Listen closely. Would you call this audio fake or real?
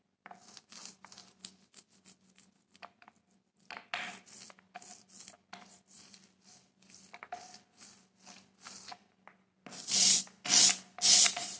real